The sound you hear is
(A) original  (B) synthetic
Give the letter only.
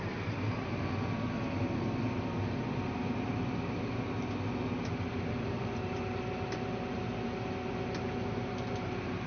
A